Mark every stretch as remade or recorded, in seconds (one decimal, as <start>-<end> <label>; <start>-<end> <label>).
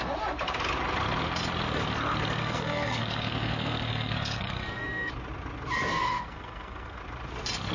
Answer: 0.0-2.4 recorded; 2.4-5.1 remade; 5.1-5.9 recorded; 5.9-7.0 remade; 7.0-7.7 recorded